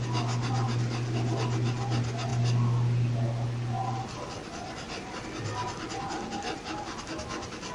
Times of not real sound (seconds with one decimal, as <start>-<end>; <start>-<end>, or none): none